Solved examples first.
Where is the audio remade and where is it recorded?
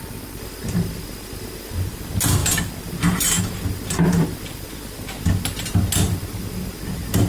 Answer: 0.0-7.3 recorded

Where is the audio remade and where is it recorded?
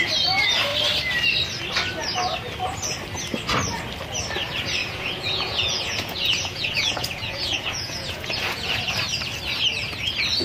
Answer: 0.0-4.8 recorded; 4.8-8.7 remade; 8.7-10.4 recorded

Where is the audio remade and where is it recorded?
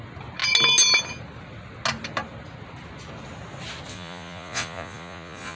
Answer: 0.0-3.9 recorded; 3.9-5.6 remade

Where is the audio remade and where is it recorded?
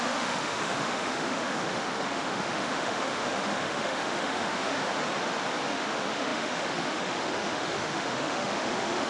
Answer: 0.0-4.8 remade; 4.8-5.7 recorded; 5.7-9.1 remade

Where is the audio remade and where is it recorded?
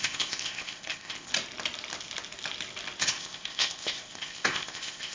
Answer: 0.0-1.3 remade; 1.3-3.0 recorded; 3.0-5.1 remade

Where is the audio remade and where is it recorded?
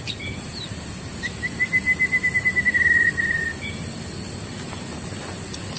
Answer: 0.0-5.8 recorded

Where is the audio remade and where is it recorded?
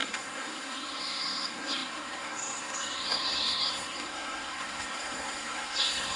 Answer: 0.0-6.2 remade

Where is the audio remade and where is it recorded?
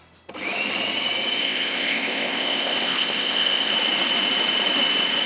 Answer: 0.0-1.4 recorded; 1.4-3.7 remade; 3.7-5.3 recorded